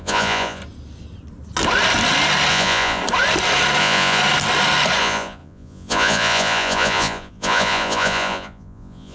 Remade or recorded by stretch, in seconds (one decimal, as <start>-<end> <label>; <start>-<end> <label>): 0.0-0.6 remade; 0.6-2.5 recorded; 2.5-3.0 remade; 3.0-3.8 recorded; 3.8-4.2 remade; 4.2-5.0 recorded; 5.0-9.1 remade